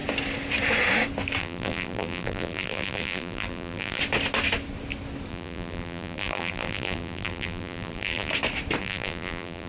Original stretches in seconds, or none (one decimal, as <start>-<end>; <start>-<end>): 0.0-1.4; 4.0-5.3; 8.3-8.8